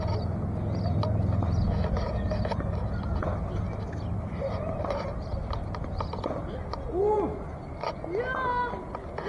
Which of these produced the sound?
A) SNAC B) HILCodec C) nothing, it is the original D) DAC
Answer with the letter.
C